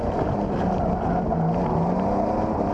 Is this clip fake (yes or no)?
no